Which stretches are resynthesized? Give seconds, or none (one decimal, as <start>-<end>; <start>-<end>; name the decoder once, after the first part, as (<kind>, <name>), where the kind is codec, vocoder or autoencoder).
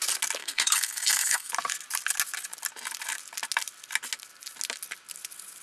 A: 0.4-1.5 (codec, SNAC)